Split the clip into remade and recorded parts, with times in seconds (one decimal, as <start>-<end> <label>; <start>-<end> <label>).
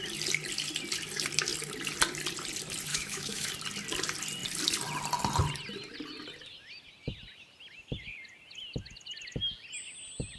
0.0-2.9 recorded; 2.9-3.5 remade; 3.5-10.4 recorded